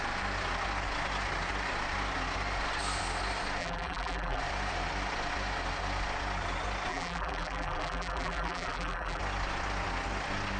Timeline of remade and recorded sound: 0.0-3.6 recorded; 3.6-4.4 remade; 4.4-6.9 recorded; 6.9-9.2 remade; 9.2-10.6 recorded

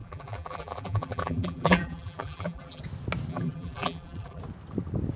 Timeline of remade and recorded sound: 0.0-2.8 remade; 2.8-3.3 recorded; 3.3-4.4 remade; 4.4-5.2 recorded

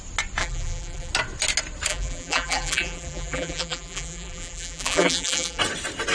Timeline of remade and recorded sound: 0.0-0.4 recorded; 0.4-1.1 remade; 1.1-1.9 recorded; 1.9-5.6 remade; 5.6-6.1 recorded